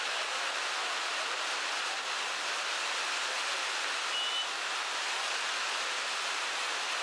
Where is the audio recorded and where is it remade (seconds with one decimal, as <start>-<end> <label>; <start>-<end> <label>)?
0.0-7.0 recorded